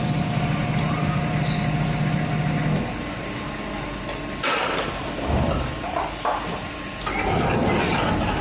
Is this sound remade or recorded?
recorded